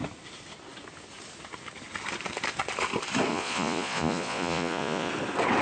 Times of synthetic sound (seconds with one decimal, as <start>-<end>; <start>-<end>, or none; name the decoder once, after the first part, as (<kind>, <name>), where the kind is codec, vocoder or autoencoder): 3.3-5.1 (vocoder, Vocos)